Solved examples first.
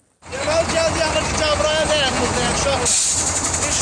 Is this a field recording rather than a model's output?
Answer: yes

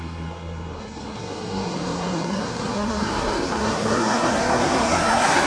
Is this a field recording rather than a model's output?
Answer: no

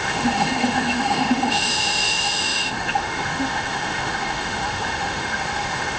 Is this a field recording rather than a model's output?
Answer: no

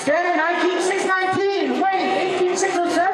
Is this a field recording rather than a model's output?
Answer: no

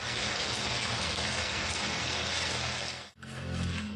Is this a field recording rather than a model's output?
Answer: no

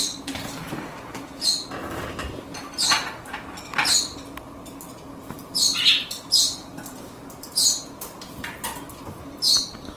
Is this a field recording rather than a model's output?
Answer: yes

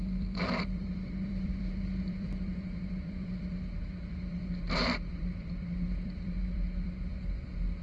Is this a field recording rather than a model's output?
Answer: no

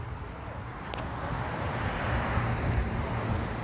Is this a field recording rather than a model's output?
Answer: yes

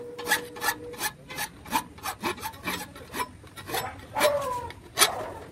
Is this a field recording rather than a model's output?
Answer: yes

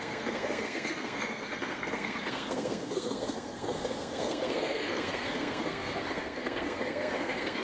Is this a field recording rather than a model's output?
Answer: no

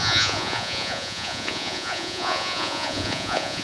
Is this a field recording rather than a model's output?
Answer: no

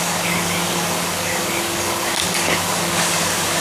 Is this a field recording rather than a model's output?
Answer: no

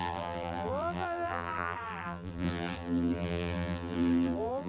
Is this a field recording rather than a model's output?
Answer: no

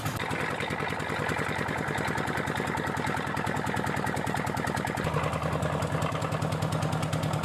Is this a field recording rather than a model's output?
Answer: yes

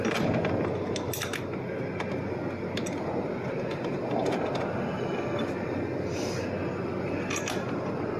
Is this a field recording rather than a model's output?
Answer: yes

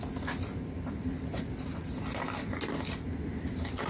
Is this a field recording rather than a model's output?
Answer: yes